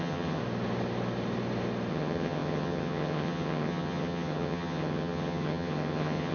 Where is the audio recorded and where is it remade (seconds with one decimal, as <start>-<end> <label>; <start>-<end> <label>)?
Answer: 0.0-0.4 remade; 0.4-1.9 recorded; 1.9-6.3 remade